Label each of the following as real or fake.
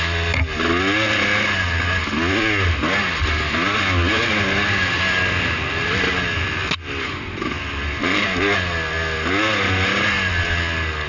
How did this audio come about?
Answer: real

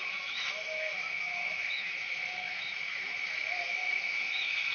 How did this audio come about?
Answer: fake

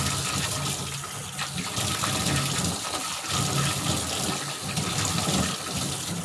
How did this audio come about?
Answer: real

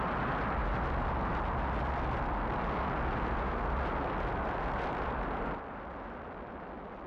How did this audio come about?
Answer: real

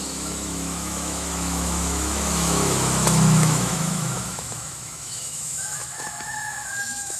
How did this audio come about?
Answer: fake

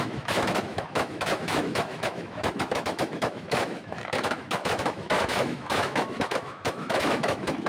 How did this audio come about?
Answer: fake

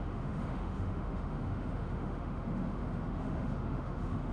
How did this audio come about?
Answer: fake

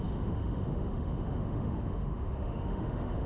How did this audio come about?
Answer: fake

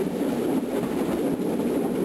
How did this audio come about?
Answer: real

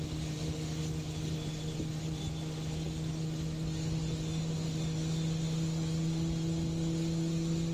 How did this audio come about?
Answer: real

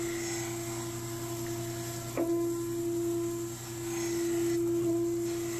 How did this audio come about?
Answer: real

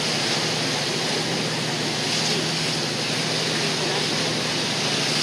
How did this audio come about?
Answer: real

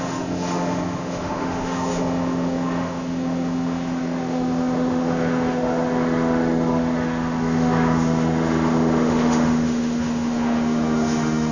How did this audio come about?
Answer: fake